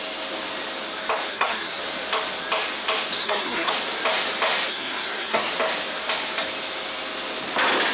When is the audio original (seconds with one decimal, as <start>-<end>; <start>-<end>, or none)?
0.0-1.3; 1.8-3.2; 3.7-4.7; 5.5-7.9